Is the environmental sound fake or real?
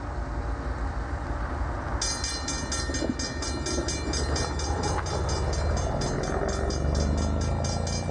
real